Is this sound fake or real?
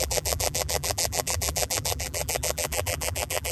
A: fake